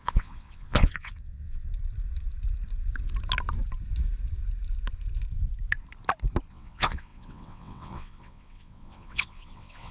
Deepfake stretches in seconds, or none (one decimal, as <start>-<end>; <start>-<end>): 0.0-1.7; 6.5-9.9